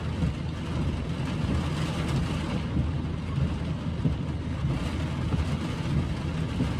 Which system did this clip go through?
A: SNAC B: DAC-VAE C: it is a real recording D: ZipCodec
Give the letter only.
C